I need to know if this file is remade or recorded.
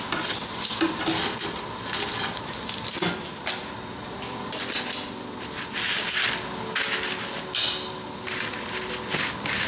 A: recorded